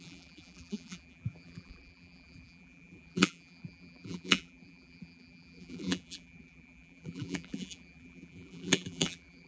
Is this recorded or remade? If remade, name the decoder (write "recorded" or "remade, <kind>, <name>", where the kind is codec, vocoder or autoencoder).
remade, vocoder, BigVGAN v2